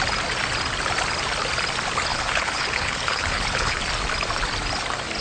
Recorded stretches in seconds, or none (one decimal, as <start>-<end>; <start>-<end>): 0.0-2.1; 3.8-5.2